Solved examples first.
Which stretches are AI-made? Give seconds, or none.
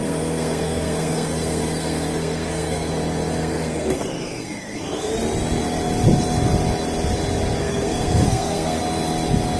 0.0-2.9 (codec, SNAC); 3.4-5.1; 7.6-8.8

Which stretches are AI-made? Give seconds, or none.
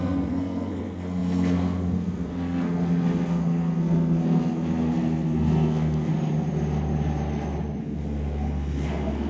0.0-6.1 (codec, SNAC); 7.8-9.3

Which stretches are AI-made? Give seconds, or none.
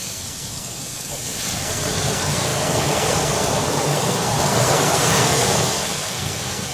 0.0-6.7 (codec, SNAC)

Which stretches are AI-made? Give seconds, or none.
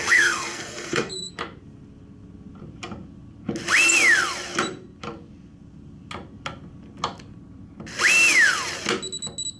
0.0-1.3 (codec, SNAC)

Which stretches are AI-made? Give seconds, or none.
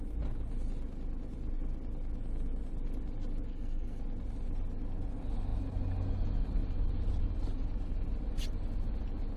3.5-4.0 (codec, SNAC)